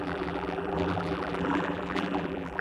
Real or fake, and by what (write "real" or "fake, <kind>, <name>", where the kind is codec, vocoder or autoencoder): fake, vocoder, BigVGAN v2